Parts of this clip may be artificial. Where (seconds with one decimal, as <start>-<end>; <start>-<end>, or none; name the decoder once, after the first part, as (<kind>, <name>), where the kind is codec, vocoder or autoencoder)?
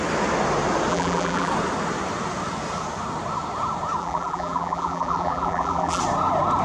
0.9-1.5 (vocoder, BigVGAN v2); 4.0-6.0